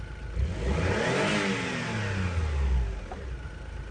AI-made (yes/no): no